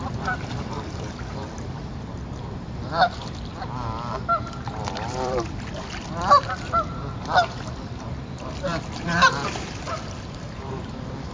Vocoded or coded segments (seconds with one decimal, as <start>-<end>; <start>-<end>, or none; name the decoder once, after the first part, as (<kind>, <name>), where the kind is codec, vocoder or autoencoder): 0.0-3.5 (vocoder, BigVGAN v2); 4.8-11.3